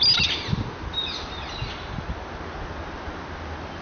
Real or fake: real